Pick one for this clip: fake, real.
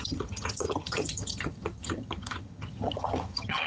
fake